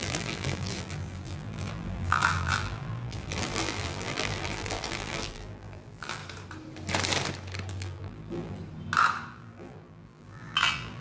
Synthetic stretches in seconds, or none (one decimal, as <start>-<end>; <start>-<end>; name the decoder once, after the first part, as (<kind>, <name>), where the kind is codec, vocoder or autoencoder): 0.0-6.2 (vocoder, BigVGAN v2); 7.7-8.6; 9.3-11.0